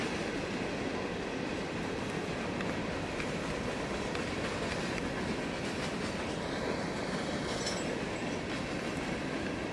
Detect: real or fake real